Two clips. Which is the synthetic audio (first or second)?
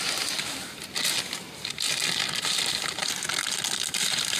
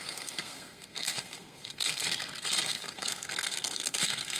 second